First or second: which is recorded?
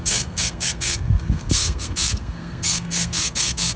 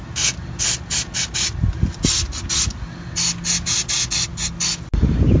second